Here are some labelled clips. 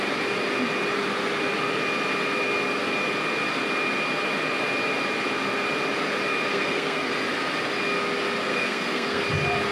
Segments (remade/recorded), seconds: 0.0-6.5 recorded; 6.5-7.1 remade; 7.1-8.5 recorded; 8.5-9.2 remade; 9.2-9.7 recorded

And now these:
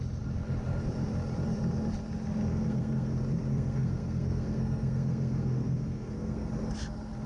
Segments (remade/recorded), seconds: 0.0-2.5 recorded; 2.5-3.1 remade; 3.1-3.5 recorded; 3.5-6.5 remade; 6.5-7.3 recorded

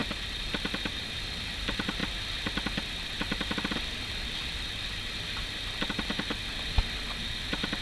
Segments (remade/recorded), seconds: 0.0-7.8 recorded

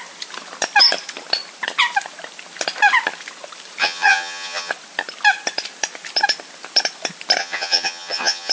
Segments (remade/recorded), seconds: 0.0-3.8 recorded; 3.8-4.7 remade; 4.7-7.4 recorded; 7.4-8.5 remade

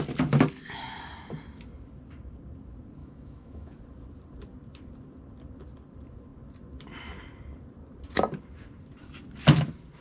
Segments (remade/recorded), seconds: 0.0-3.0 recorded; 3.0-3.8 remade; 3.8-10.0 recorded